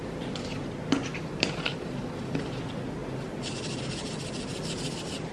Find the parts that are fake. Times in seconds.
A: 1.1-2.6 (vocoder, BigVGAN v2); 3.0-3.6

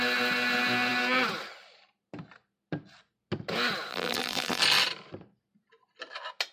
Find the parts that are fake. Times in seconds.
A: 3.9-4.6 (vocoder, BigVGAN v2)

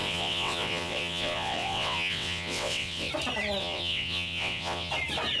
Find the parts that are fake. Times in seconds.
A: 0.0-3.1 (vocoder, WaveNeXt); 3.6-4.9

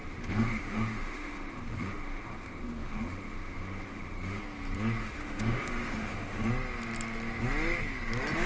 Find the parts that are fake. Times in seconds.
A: 0.0-4.4 (autoencoder, DAC-VAE); 5.0-6.4

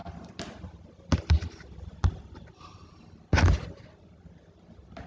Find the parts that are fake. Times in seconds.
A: none

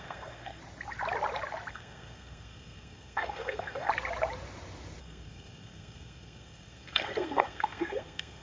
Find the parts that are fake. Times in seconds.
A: 0.0-0.6 (codec, SNAC); 1.7-3.9; 5.0-8.4